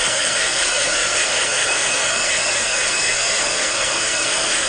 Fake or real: fake